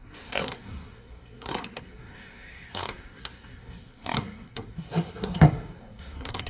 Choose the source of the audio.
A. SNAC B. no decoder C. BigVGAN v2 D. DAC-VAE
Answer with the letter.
A